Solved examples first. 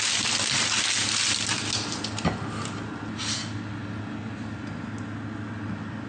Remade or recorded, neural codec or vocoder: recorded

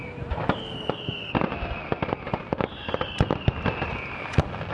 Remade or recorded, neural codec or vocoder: recorded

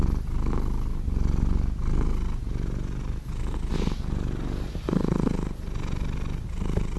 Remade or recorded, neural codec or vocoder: recorded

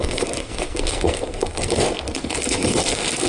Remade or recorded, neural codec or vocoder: remade, codec, SNAC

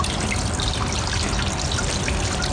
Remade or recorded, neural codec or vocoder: recorded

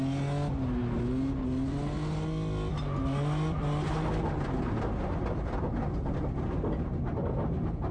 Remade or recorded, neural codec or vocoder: recorded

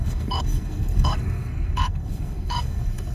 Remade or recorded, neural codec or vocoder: remade, codec, SNAC